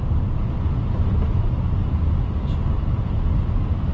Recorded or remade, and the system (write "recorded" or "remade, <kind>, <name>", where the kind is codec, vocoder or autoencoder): recorded